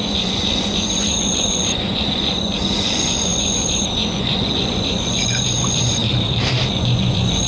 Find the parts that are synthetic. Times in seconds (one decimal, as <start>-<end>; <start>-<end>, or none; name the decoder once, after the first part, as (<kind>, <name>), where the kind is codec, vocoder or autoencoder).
0.0-6.0 (vocoder, Vocos); 6.7-7.5